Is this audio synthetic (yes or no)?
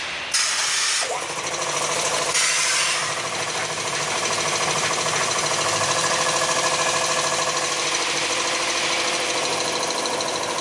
no